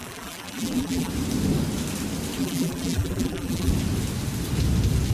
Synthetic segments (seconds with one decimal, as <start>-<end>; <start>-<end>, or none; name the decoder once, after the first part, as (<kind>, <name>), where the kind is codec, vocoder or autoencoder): 0.0-1.1 (vocoder, BigVGAN v2); 2.4-3.7